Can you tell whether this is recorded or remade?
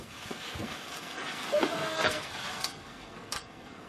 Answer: remade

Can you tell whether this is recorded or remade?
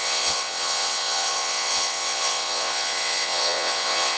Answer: remade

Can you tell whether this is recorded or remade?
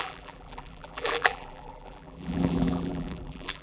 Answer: remade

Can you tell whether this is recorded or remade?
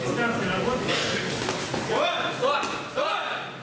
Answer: recorded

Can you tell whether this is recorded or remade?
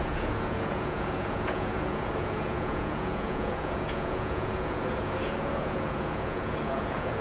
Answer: remade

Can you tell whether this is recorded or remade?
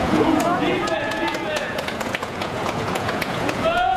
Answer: remade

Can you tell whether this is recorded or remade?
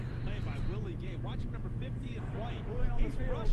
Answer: remade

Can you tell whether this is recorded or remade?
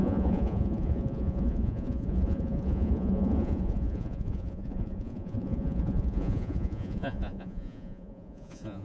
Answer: remade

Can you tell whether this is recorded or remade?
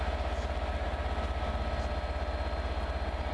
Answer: recorded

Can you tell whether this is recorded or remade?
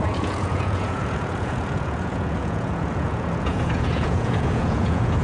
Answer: remade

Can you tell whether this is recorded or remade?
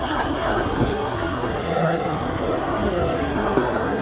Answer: remade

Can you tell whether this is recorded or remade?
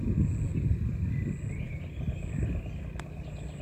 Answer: recorded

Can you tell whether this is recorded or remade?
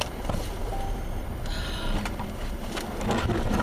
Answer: recorded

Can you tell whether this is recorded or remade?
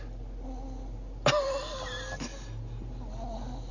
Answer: recorded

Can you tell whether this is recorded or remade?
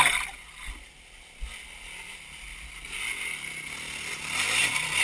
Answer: recorded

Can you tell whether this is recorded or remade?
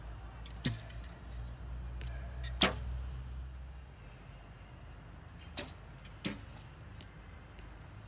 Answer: recorded